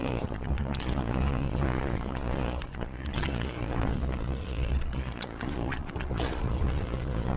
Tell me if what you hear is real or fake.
fake